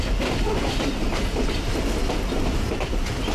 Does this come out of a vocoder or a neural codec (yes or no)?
no